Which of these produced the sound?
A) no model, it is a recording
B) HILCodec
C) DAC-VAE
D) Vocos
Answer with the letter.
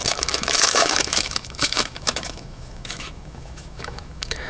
C